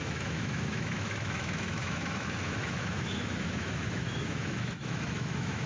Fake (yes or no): yes